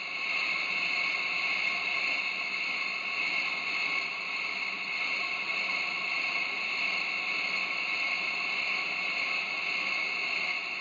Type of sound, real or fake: real